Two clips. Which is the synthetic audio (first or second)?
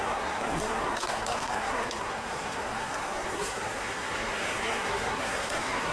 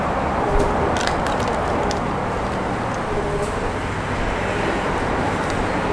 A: first